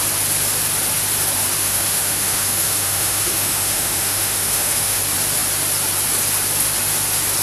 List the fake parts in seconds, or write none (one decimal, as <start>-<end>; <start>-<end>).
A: 1.6-5.0

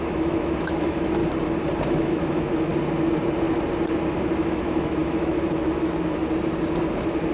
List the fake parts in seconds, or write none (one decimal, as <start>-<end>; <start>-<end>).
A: 0.0-1.2; 1.9-2.7; 4.4-6.2

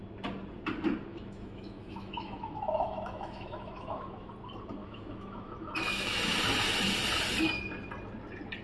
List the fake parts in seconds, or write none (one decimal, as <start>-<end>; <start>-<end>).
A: 1.1-4.3; 4.8-6.2

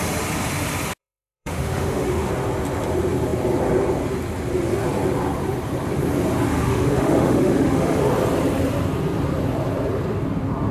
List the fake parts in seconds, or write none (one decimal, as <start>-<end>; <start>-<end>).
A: 1.0-2.3; 6.5-8.0